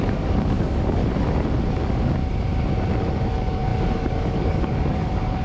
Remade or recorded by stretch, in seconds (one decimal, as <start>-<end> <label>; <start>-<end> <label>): 0.0-1.0 remade; 1.0-1.7 recorded; 1.7-2.2 remade; 2.2-3.1 recorded; 3.1-5.4 remade